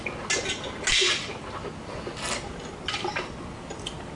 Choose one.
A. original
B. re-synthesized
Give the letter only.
A